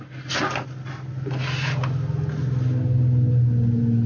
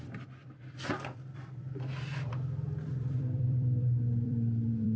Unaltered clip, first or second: first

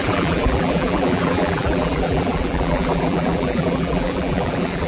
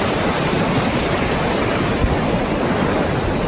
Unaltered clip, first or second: second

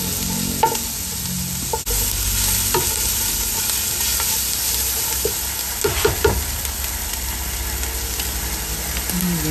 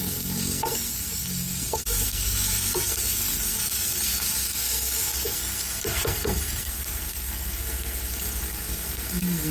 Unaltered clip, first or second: first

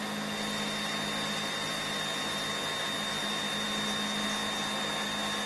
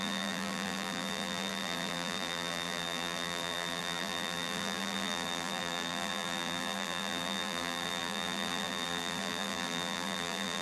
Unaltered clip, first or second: first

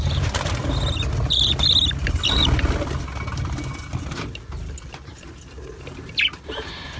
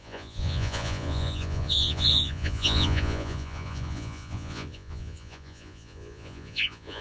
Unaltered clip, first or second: first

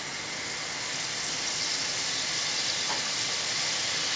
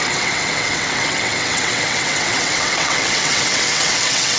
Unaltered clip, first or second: first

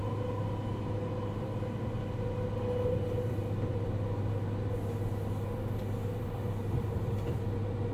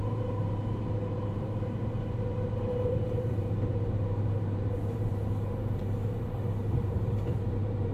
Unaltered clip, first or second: first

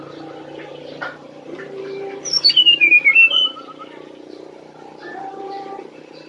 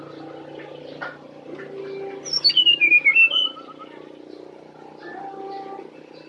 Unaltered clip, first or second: second